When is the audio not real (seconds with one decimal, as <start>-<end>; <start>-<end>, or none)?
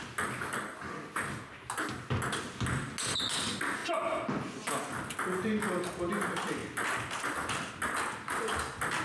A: none